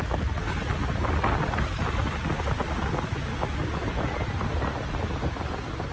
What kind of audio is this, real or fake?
real